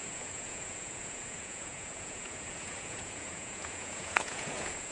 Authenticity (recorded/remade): remade